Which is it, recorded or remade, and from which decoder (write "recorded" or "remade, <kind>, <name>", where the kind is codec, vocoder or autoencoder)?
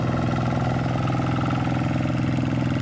recorded